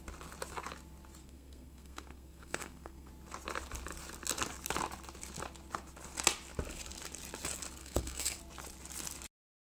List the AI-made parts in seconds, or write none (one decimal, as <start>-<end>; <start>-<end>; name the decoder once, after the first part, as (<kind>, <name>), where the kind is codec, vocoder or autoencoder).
1.2-3.1 (codec, SNAC); 7.8-8.4

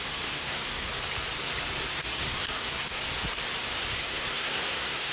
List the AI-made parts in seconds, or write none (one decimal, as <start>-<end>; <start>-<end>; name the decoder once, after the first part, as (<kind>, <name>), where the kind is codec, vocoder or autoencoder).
0.0-0.9 (codec, SNAC); 1.9-3.0; 3.9-5.1

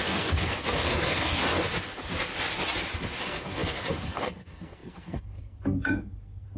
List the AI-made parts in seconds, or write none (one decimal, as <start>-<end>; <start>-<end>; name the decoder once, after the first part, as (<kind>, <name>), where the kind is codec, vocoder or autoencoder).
0.0-1.4 (codec, SNAC); 3.2-6.6

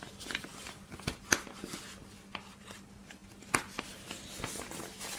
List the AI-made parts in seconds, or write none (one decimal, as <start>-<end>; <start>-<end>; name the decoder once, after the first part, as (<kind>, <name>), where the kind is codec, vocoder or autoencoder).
none